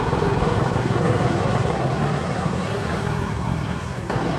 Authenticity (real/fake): fake